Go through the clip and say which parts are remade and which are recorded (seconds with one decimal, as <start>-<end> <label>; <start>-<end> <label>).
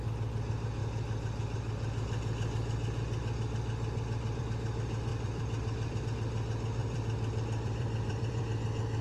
0.0-5.1 recorded; 5.1-6.0 remade; 6.0-6.8 recorded; 6.8-8.4 remade; 8.4-9.0 recorded